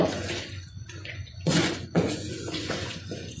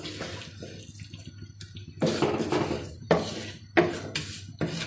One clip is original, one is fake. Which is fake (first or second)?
first